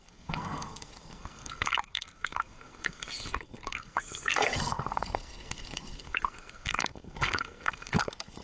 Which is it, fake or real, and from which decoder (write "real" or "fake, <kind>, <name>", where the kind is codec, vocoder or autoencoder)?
fake, codec, SNAC